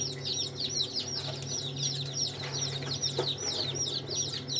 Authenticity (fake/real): real